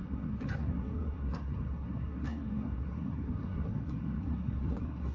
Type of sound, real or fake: fake